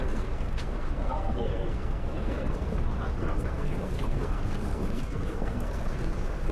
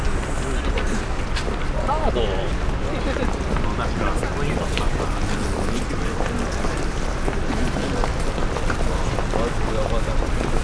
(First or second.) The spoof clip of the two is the first